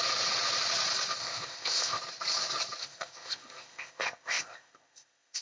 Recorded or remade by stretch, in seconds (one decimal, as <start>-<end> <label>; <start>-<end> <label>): 0.0-1.2 recorded; 1.2-2.0 remade; 2.0-2.8 recorded; 2.8-5.4 remade